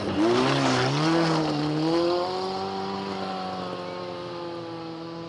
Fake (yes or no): no